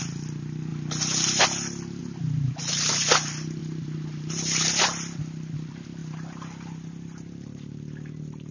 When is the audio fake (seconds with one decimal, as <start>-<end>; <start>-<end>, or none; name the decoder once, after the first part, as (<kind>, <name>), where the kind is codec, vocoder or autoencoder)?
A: 2.0-2.9 (vocoder, BigVGAN v2); 3.6-4.8; 6.0-8.5